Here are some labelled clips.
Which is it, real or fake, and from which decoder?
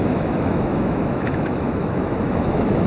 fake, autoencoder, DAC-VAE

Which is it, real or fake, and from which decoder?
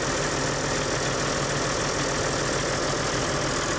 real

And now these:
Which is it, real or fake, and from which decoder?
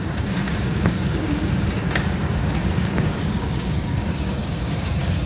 fake, codec, DAC